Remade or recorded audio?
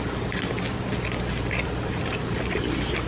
recorded